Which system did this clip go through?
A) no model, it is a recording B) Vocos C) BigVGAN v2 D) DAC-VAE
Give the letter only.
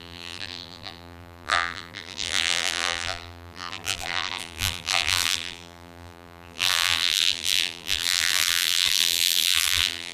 C